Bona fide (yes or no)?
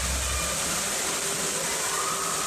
yes